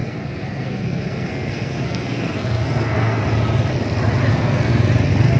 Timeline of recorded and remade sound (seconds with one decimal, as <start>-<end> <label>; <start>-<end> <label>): 0.0-3.2 remade; 3.2-4.3 recorded; 4.3-4.8 remade; 4.8-5.4 recorded